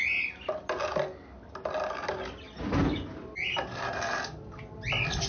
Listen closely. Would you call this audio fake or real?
real